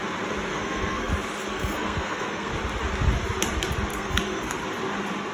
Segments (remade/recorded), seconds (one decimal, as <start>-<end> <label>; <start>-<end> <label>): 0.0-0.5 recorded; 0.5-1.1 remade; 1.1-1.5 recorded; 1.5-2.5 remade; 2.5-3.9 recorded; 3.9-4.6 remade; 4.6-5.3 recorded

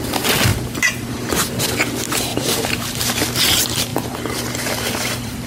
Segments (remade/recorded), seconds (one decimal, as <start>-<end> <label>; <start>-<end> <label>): 0.0-0.5 recorded; 0.5-1.1 remade; 1.1-2.3 recorded; 2.3-3.5 remade; 3.5-3.9 recorded; 3.9-5.5 remade

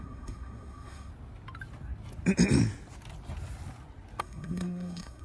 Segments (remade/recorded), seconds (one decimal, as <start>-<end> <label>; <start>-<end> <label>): 0.0-1.1 remade; 1.1-4.2 recorded; 4.2-5.2 remade

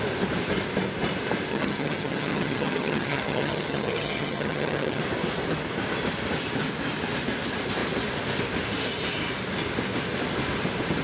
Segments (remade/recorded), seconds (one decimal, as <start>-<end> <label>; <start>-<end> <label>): 0.0-1.5 recorded; 1.5-5.0 remade; 5.0-11.0 recorded